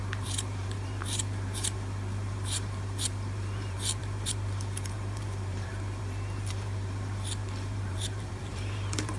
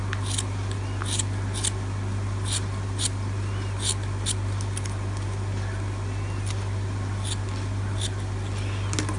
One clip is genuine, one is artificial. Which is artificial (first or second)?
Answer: first